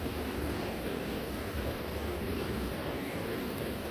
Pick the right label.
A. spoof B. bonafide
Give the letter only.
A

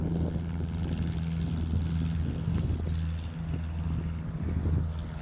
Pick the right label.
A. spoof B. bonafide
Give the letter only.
B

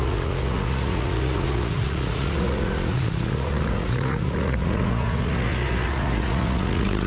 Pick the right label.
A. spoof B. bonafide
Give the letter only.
A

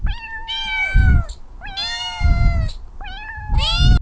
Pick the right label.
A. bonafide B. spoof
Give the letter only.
A